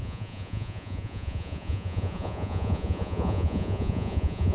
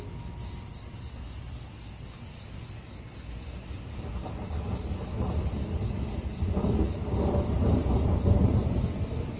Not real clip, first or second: first